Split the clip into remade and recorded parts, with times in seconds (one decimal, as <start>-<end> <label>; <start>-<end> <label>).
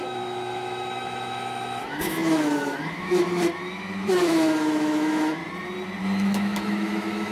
0.0-5.4 remade; 5.4-6.0 recorded; 6.0-7.3 remade